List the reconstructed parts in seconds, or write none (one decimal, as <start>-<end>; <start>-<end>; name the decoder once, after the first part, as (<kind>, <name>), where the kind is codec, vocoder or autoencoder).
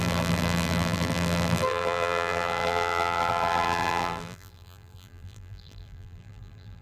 0.0-6.8 (vocoder, BigVGAN v2)